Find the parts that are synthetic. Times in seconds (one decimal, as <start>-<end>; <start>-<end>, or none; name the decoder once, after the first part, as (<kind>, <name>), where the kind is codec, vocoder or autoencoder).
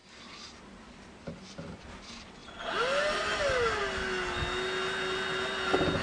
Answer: none